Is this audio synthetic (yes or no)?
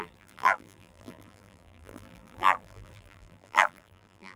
yes